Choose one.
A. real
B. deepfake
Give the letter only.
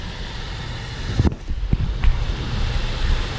A